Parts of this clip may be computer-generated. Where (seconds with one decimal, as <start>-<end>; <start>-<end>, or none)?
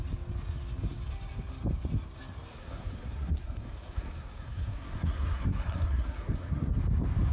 2.5-6.8